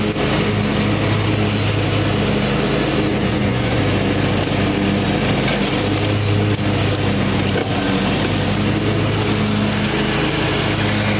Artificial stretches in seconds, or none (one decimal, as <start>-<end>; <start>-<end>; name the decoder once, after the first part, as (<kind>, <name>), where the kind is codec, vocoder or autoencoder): 3.1-3.8 (vocoder, Vocos)